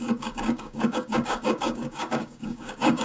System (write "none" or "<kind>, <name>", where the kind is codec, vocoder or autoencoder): codec, DAC